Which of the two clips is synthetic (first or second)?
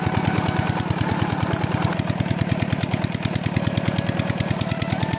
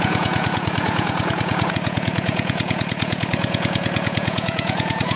second